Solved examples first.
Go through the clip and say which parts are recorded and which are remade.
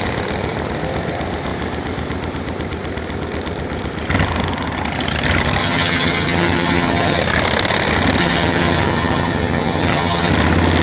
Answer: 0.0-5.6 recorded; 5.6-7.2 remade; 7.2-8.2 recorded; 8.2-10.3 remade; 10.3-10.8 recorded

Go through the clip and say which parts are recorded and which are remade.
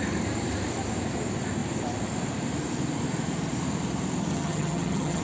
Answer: 0.0-4.3 recorded; 4.3-5.2 remade